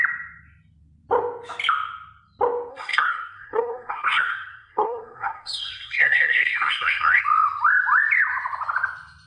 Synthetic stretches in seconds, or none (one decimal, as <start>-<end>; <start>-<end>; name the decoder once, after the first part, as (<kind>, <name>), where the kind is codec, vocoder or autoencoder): 2.7-7.2 (codec, SNAC)